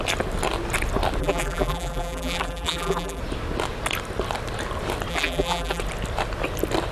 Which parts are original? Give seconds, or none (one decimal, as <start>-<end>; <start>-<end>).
0.0-1.2; 3.2-5.1; 5.8-6.9

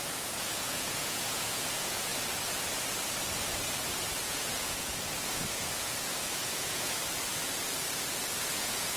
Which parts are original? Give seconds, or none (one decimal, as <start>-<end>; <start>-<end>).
2.1-4.2; 7.0-8.5

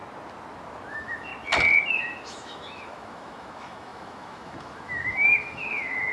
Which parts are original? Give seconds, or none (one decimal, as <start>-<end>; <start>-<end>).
0.0-0.9; 1.3-1.9

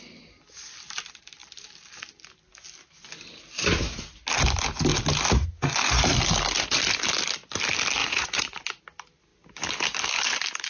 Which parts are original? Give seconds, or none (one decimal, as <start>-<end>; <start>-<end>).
0.0-8.0; 8.6-10.7

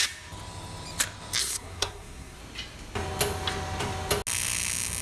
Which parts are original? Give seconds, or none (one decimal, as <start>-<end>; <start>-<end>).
0.0-1.4; 2.4-5.0